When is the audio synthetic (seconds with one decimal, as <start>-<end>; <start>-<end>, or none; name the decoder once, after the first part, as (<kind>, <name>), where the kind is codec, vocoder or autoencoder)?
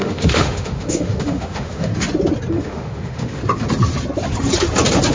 0.0-1.9 (autoencoder, DAC-VAE); 2.5-3.4